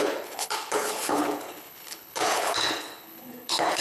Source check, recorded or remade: remade